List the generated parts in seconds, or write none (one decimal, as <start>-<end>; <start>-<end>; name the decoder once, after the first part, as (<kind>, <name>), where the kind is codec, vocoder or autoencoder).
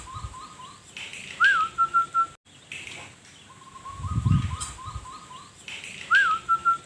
none